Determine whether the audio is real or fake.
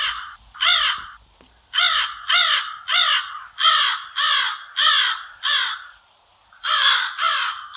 real